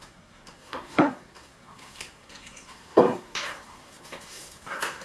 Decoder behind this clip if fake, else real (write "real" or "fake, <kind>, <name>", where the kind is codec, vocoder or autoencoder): fake, codec, SNAC